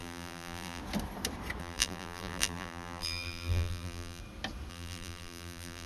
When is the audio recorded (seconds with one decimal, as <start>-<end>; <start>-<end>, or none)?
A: 0.8-1.6; 4.2-4.7